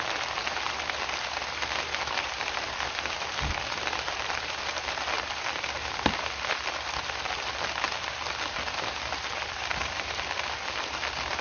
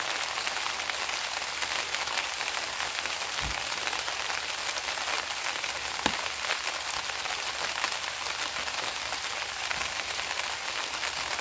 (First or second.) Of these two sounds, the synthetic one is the first